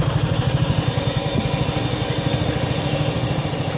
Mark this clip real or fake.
real